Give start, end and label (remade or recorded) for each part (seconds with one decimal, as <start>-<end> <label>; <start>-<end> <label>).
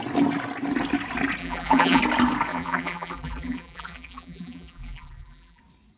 0.0-1.4 recorded; 1.4-2.0 remade; 2.0-2.5 recorded; 2.5-5.6 remade; 5.6-6.0 recorded